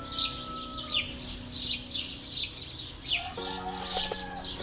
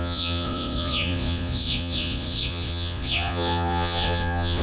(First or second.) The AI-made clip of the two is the second